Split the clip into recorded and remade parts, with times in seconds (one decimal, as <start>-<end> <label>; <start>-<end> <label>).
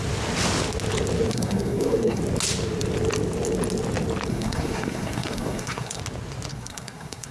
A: 0.0-1.3 recorded; 1.3-2.2 remade; 2.2-4.3 recorded; 4.3-6.0 remade; 6.0-6.5 recorded; 6.5-7.3 remade